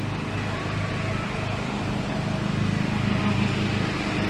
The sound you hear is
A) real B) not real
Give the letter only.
A